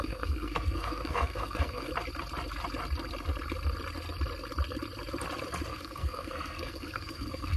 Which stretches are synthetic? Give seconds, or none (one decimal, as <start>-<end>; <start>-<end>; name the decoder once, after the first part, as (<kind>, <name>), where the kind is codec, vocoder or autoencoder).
0.0-1.9 (codec, SNAC); 5.7-7.6